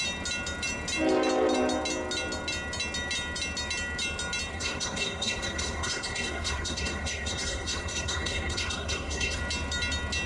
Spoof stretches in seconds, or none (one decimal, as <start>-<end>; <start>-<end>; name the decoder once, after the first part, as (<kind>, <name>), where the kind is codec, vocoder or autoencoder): 4.5-9.4 (codec, SNAC)

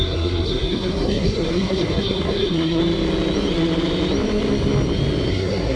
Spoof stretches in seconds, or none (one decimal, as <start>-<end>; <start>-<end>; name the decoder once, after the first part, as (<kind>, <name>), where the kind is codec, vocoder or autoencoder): 0.0-2.8 (codec, SNAC); 5.3-5.8

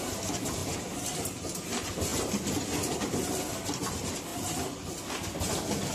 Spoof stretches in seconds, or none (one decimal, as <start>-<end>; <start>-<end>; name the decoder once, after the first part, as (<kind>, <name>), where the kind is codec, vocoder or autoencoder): none

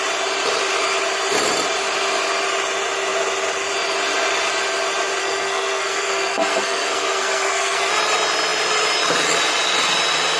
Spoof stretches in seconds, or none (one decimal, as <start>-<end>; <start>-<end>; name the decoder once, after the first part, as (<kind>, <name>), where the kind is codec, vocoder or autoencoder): 5.2-7.9 (codec, SNAC)

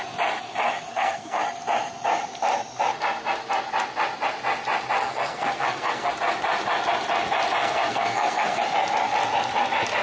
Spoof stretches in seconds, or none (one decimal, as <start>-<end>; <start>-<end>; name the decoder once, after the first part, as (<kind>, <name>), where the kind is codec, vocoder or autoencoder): 0.9-1.4 (codec, SNAC); 5.0-6.1; 7.6-8.6